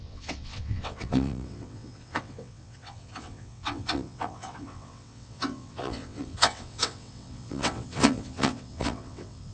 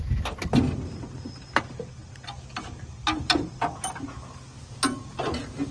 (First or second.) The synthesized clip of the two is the first